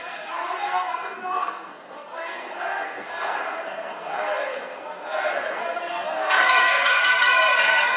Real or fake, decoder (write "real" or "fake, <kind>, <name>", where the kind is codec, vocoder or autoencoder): fake, codec, SNAC